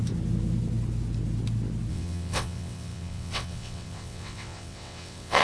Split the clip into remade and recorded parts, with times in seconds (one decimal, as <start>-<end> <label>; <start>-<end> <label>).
0.0-1.9 recorded; 1.9-5.4 remade